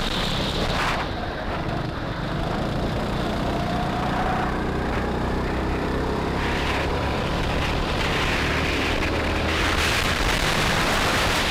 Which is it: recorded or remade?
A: remade